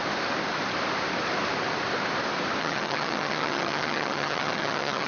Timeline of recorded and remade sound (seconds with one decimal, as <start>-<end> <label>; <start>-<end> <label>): 0.0-2.6 recorded; 2.6-5.1 remade